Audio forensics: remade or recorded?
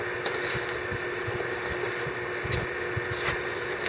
recorded